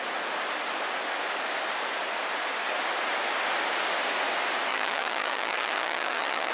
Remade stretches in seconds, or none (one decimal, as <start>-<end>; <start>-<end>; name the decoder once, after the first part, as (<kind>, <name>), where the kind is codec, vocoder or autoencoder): 4.7-6.5 (vocoder, HiFi-GAN)

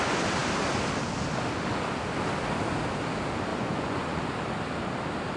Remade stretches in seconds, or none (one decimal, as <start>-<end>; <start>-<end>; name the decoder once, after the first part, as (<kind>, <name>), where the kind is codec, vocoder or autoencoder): 3.5-4.2 (vocoder, Vocos)

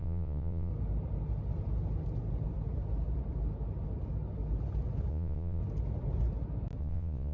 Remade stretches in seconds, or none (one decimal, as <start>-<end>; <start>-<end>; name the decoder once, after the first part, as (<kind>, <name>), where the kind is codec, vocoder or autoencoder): 0.0-0.7 (vocoder, Vocos); 5.1-5.6; 6.8-7.3

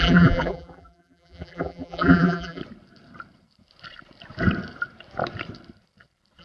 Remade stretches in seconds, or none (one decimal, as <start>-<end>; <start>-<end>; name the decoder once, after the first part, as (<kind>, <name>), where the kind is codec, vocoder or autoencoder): 0.0-2.6 (vocoder, BigVGAN v2)

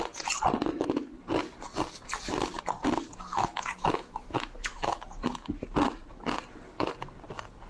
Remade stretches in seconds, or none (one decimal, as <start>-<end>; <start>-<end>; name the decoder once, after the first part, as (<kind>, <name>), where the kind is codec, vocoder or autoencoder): 0.7-1.2 (autoencoder, DAC-VAE); 3.3-5.0